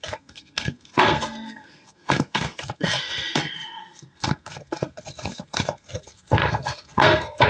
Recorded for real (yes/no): no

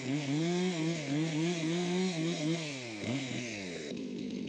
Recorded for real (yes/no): no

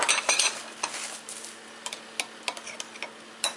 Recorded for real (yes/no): yes